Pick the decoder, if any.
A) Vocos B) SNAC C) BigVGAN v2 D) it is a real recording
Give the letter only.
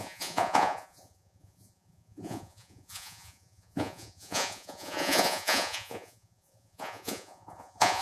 A